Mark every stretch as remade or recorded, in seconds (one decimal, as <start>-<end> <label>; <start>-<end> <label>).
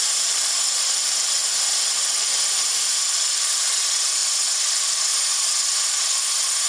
0.0-6.7 recorded